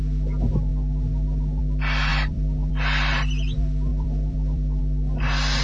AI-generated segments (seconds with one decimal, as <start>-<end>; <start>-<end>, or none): 2.1-2.7; 3.9-4.8